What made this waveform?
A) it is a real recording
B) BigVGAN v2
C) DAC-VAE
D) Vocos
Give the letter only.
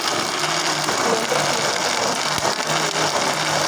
A